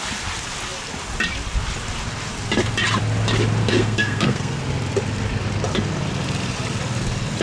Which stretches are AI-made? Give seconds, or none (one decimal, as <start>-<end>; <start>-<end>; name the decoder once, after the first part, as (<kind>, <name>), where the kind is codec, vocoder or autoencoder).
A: 3.6-4.6 (codec, SNAC)